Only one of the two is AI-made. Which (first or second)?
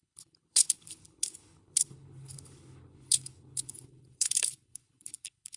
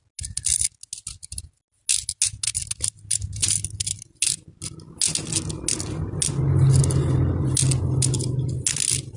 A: first